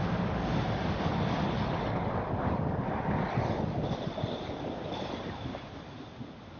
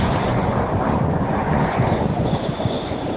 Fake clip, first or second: second